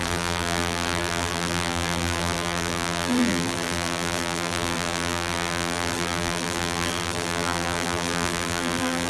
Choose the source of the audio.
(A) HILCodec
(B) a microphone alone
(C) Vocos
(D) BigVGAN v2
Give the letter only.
D